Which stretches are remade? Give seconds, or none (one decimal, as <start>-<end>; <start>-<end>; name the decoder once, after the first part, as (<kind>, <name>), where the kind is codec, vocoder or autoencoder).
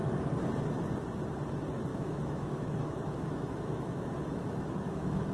1.9-5.3 (autoencoder, DAC-VAE)